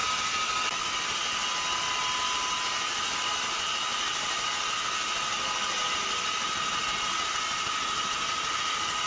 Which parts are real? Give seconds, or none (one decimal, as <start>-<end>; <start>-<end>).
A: 0.8-9.1